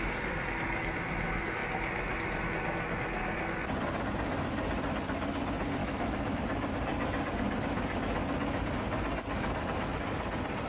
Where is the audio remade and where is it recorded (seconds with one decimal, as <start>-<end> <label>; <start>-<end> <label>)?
0.0-5.8 recorded; 5.8-6.4 remade; 6.4-10.7 recorded